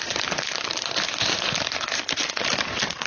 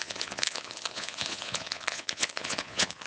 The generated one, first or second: second